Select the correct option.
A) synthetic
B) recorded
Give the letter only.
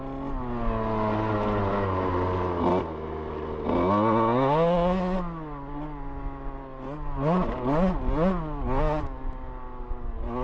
B